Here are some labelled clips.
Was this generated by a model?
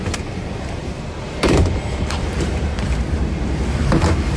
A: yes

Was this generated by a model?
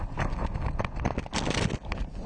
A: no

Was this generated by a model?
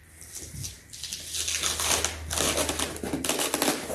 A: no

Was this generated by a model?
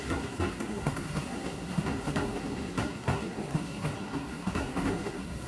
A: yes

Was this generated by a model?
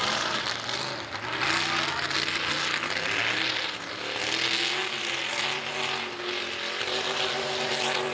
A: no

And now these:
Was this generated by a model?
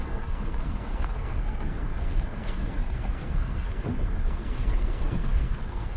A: yes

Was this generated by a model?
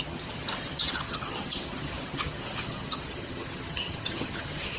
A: yes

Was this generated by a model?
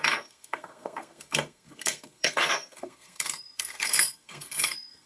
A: yes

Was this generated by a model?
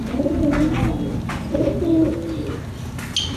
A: no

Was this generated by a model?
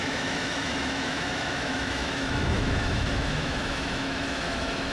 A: yes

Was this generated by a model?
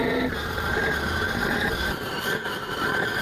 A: yes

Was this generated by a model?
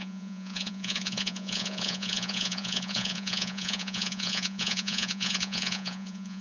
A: yes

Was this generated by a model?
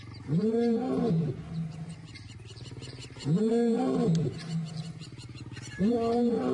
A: no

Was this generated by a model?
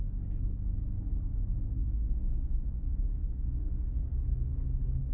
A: yes